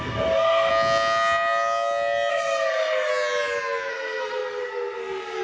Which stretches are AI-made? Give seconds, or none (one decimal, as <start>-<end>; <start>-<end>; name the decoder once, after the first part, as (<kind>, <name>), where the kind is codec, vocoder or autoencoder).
0.0-0.7 (codec, SNAC); 2.3-3.1; 3.9-5.4